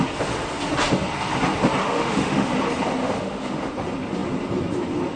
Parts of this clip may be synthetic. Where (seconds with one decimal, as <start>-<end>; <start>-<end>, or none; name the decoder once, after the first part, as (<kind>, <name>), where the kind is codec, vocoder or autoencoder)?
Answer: 1.8-2.5 (autoencoder, DAC-VAE); 3.0-3.7